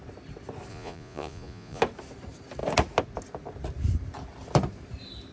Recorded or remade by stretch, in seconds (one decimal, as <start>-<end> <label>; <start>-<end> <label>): 0.0-0.7 recorded; 0.7-1.8 remade; 1.8-5.3 recorded